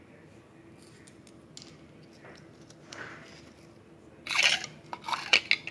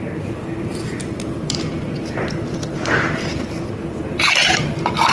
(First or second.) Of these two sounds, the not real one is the second